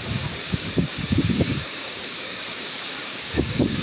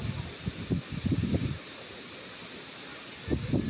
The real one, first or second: second